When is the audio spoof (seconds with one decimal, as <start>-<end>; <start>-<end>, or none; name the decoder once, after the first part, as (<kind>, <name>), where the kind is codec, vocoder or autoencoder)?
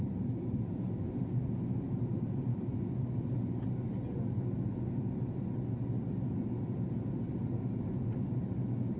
0.0-2.5 (vocoder, BigVGAN v2); 7.2-9.0